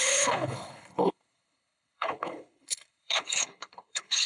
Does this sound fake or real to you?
fake